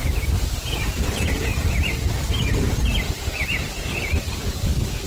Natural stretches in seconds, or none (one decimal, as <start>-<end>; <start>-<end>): 1.5-5.1

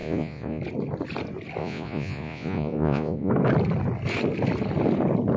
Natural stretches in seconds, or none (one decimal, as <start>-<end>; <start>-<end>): 0.6-1.6; 3.3-5.4

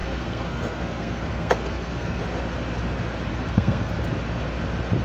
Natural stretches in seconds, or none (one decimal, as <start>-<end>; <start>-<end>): 2.2-3.3; 4.0-5.0

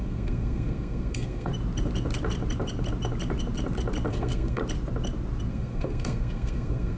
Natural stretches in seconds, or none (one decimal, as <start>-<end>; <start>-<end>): 1.5-4.1; 4.6-5.5

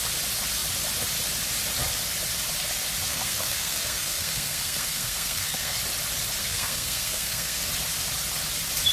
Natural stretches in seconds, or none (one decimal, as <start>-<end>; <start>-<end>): 0.0-3.1; 5.8-6.4; 7.7-8.9

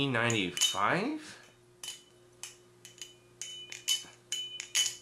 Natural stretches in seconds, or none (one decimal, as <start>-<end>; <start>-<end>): 0.0-5.0